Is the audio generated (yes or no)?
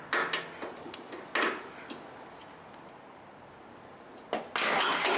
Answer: no